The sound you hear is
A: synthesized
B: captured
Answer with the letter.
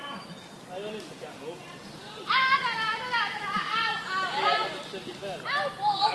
B